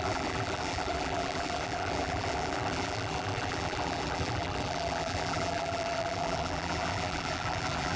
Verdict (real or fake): fake